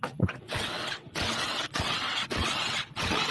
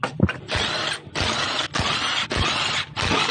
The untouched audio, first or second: second